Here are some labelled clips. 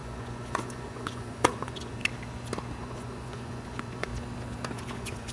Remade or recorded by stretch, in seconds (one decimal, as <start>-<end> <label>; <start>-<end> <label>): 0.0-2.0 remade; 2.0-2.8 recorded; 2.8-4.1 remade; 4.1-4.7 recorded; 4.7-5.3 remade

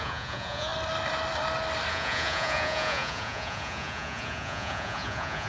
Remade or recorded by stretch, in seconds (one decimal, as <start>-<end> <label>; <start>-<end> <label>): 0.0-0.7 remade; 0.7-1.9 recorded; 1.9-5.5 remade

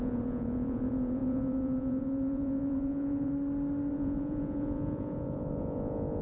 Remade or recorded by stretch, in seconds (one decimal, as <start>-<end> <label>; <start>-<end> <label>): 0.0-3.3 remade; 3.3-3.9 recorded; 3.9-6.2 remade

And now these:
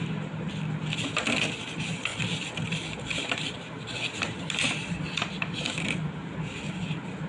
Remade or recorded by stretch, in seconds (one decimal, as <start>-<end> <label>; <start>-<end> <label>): 0.0-7.3 recorded

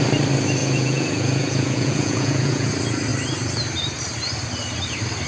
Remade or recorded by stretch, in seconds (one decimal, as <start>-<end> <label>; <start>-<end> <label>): 0.0-0.6 recorded; 0.6-2.7 remade; 2.7-5.3 recorded

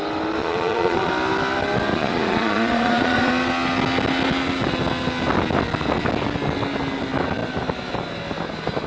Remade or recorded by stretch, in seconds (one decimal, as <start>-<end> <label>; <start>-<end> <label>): 0.0-0.4 recorded; 0.4-1.1 remade; 1.1-1.9 recorded; 1.9-3.3 remade; 3.3-8.9 recorded

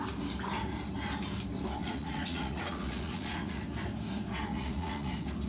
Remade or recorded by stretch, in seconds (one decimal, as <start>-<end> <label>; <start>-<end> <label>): 0.0-1.8 recorded; 1.8-3.6 remade; 3.6-4.5 recorded; 4.5-5.1 remade; 5.1-5.5 recorded

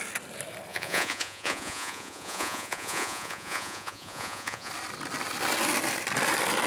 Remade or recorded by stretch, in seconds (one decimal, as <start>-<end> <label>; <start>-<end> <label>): 0.0-0.7 recorded; 0.7-4.7 remade; 4.7-6.7 recorded